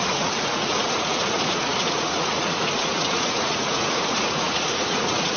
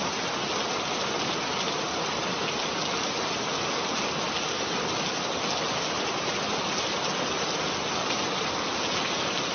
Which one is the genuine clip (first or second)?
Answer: second